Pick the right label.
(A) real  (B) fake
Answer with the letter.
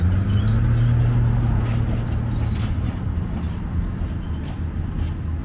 A